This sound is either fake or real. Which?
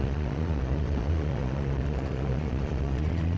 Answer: fake